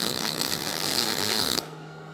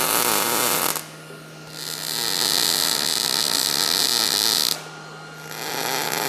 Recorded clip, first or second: second